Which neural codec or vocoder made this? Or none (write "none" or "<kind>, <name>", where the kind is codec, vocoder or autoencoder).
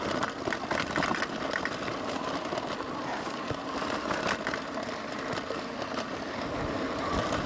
none